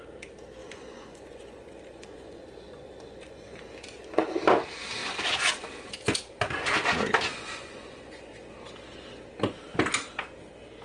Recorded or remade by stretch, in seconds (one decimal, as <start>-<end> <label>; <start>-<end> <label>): 0.0-0.6 recorded; 0.6-4.2 remade; 4.2-7.3 recorded; 7.3-8.3 remade; 8.3-10.8 recorded